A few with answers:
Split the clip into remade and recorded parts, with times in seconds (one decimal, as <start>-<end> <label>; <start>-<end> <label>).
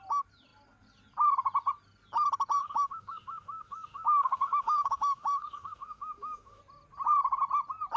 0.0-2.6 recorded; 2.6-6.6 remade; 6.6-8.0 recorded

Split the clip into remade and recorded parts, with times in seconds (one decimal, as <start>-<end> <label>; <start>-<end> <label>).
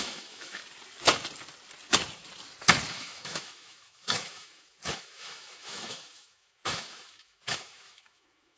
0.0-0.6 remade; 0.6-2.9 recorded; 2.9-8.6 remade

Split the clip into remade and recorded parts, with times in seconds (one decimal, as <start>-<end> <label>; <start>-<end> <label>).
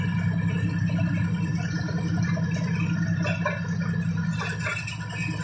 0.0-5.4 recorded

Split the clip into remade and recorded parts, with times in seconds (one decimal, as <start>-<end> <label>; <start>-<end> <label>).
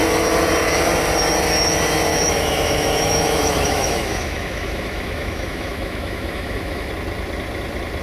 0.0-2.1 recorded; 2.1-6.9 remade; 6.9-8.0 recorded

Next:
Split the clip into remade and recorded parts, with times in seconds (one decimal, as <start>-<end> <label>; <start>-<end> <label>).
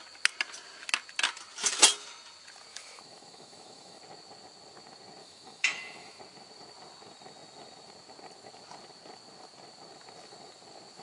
0.0-2.7 recorded; 2.7-4.0 remade; 4.0-5.2 recorded; 5.2-6.2 remade; 6.2-11.0 recorded